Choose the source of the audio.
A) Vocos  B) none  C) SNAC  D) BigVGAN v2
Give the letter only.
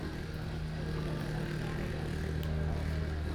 B